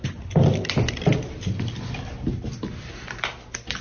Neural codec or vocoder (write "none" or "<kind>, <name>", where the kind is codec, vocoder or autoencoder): none